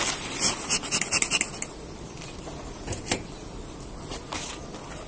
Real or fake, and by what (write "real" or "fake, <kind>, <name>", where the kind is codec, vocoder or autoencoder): real